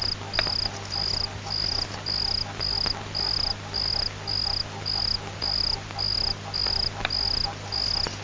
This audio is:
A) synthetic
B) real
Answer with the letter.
B